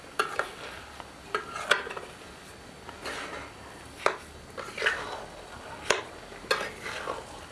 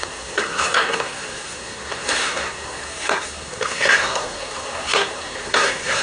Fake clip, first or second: second